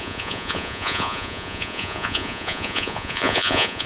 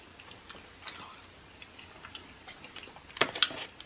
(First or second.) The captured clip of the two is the second